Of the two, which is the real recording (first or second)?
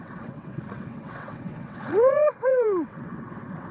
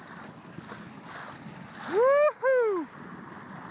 second